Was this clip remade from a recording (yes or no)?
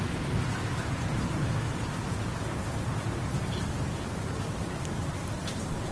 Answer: no